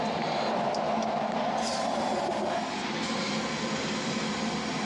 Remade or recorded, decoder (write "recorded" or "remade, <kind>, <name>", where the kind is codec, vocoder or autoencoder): recorded